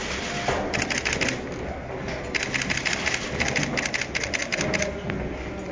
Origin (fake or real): real